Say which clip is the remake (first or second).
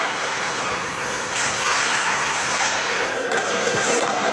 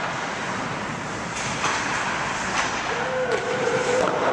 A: first